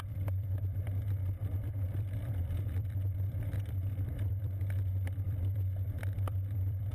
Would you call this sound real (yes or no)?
no